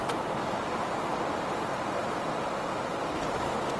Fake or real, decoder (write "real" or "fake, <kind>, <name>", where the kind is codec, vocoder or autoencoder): real